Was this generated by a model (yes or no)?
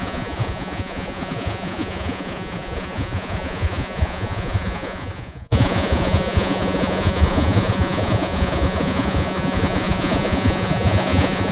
yes